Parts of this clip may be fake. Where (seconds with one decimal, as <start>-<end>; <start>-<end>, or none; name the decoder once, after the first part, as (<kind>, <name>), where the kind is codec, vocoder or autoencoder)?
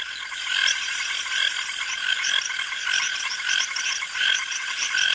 none